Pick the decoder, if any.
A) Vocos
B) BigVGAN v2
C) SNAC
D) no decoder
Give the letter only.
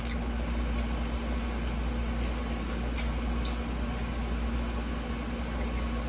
D